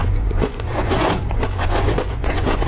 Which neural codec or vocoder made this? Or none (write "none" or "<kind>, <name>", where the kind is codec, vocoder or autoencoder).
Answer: vocoder, Vocos